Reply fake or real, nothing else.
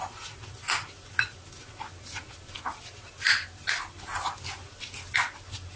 real